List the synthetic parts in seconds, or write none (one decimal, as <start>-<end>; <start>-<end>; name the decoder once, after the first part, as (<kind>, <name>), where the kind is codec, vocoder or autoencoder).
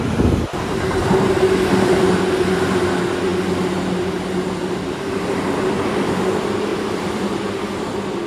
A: 6.7-7.4 (vocoder, BigVGAN v2)